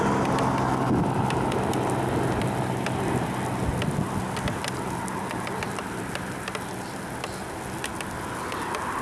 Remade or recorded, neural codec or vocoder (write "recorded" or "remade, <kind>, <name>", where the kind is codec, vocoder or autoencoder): recorded